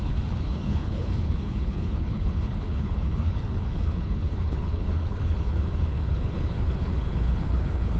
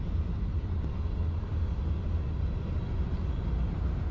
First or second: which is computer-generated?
first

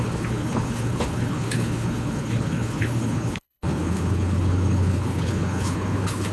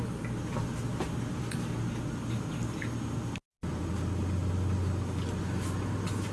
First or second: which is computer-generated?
first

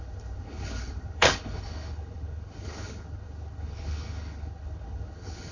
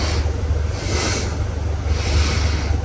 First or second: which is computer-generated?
first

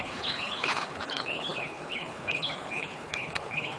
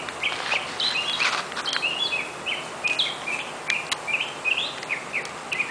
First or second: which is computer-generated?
first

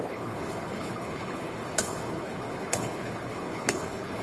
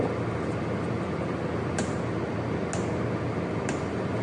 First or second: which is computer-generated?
first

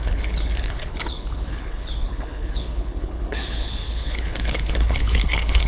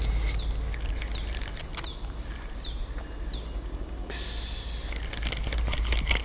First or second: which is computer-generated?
first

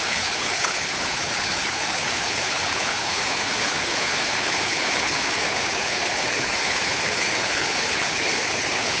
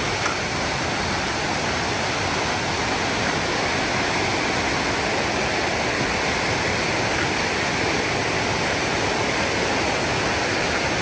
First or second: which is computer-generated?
first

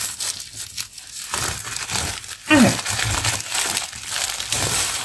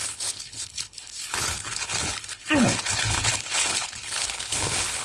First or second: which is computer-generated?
second